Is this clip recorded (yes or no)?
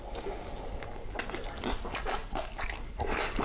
yes